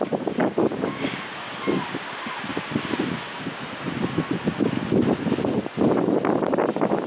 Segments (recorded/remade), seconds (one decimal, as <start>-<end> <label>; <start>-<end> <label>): 0.0-0.4 recorded; 0.4-1.5 remade; 1.5-7.1 recorded